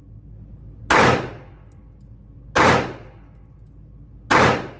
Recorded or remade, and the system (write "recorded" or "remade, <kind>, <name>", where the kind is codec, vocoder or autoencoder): recorded